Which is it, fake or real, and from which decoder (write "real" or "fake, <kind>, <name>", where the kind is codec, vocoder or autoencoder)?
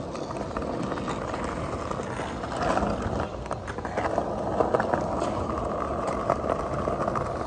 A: real